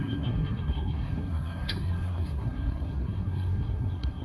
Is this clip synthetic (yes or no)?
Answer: yes